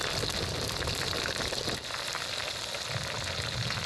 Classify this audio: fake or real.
real